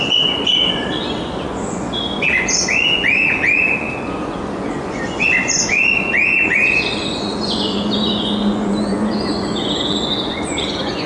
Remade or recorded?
remade